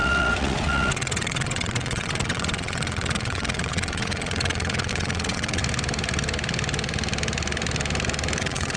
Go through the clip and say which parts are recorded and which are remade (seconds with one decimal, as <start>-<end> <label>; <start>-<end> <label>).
0.0-5.6 remade; 5.6-8.4 recorded; 8.4-8.8 remade